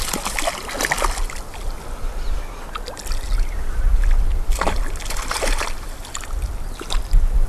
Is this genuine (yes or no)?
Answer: yes